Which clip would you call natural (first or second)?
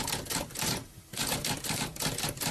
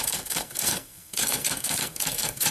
first